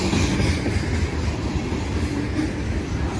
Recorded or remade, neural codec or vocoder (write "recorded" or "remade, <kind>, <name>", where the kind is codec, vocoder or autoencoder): recorded